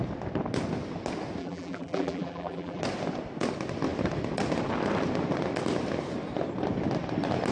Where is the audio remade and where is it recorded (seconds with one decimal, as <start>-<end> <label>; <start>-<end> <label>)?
0.0-1.4 recorded; 1.4-2.8 remade; 2.8-7.5 recorded